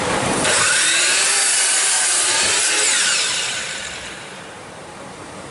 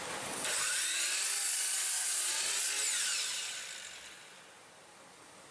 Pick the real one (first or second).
second